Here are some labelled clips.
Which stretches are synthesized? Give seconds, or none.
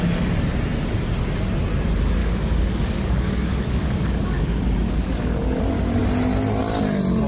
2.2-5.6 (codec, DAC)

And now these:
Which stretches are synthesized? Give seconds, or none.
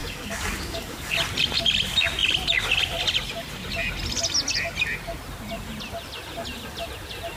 0.0-1.1 (codec, DAC)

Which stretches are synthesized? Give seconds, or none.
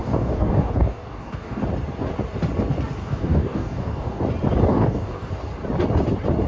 0.0-1.6 (codec, DAC); 3.0-4.2; 4.7-5.3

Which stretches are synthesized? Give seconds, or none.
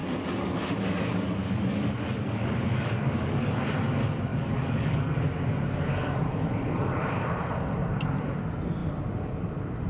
0.0-3.5 (codec, DAC); 4.3-5.2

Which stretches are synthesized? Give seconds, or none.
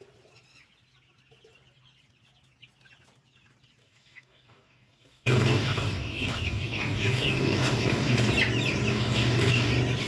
3.8-8.3 (codec, DAC); 8.9-9.7